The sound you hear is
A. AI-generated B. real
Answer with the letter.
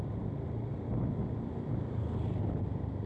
B